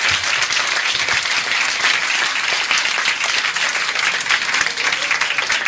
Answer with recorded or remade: recorded